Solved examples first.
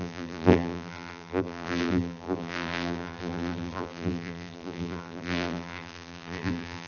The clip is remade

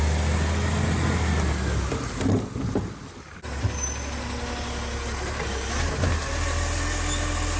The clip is recorded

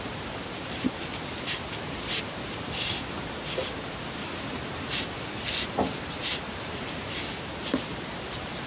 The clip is remade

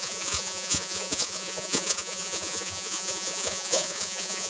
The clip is remade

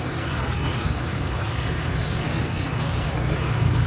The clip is remade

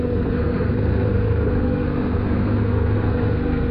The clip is remade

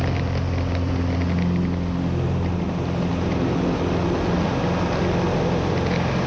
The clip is recorded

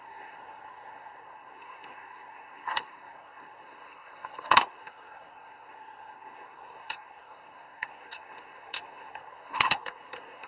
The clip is remade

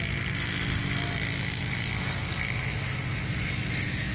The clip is recorded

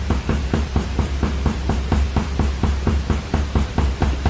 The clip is remade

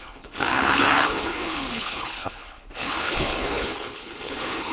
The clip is remade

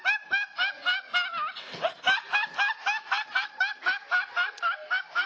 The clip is recorded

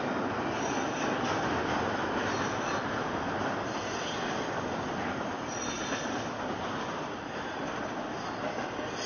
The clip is recorded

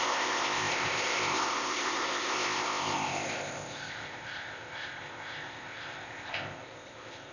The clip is remade